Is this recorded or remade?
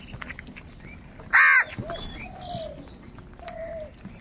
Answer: recorded